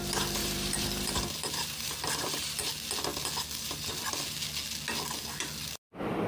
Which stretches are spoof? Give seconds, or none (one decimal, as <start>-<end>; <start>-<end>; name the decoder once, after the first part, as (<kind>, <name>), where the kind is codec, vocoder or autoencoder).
0.4-2.7 (vocoder, BigVGAN v2)